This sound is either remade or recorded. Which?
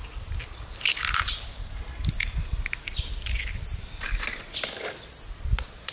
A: recorded